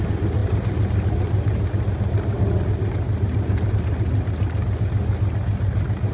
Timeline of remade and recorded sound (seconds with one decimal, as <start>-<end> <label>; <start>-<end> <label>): 0.0-6.1 recorded